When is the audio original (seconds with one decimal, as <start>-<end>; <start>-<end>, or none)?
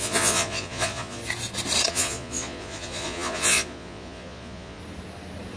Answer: 1.2-1.9; 4.8-5.6